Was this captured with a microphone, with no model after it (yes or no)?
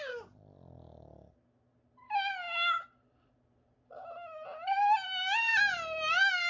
yes